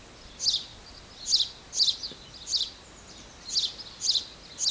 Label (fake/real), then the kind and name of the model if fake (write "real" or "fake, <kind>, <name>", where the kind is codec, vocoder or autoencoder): real